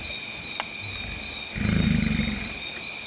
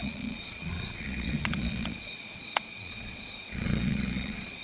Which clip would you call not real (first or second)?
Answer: second